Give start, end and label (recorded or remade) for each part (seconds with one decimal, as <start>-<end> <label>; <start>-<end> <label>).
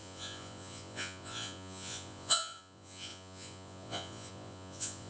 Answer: 0.0-5.1 remade